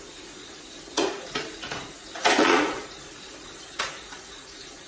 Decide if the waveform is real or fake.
fake